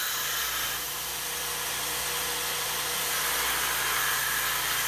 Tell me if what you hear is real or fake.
real